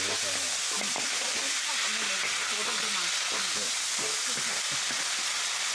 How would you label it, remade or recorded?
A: recorded